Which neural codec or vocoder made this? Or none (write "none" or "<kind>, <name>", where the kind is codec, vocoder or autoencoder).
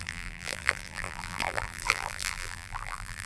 vocoder, BigVGAN v2